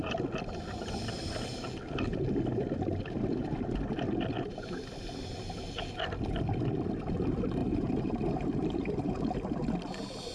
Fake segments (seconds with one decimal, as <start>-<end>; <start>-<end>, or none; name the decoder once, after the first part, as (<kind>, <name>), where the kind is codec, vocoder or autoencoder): 7.6-9.2 (vocoder, BigVGAN v2)